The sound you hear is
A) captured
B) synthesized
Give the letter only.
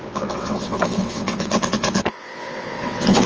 B